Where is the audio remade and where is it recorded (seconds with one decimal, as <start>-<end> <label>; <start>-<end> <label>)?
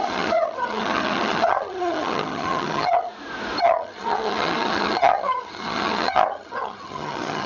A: 0.0-3.1 remade; 3.1-3.6 recorded; 3.6-7.5 remade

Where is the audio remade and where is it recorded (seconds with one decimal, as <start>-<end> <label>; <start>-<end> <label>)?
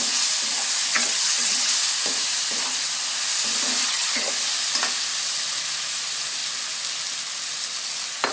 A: 0.0-0.9 recorded; 0.9-1.7 remade; 1.7-3.8 recorded; 3.8-4.3 remade; 4.3-8.3 recorded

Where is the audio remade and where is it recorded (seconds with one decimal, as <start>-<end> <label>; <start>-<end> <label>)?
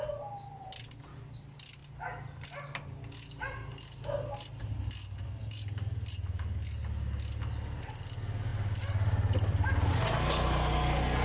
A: 0.0-11.2 recorded